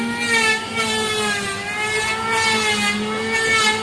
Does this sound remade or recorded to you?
recorded